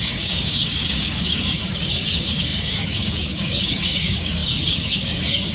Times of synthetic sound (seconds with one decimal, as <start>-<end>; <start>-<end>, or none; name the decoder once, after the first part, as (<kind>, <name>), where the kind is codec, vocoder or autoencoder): 0.0-5.5 (codec, DAC)